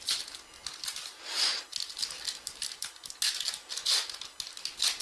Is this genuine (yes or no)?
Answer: yes